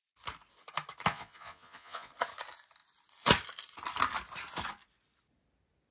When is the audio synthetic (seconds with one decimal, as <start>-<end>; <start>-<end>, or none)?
1.1-2.1